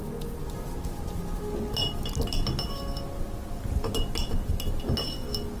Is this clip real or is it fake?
real